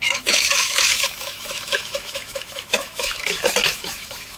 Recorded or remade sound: remade